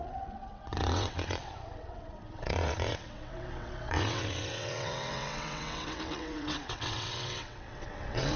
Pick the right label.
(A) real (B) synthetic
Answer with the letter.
B